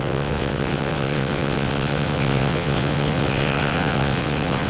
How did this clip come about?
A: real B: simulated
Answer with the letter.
B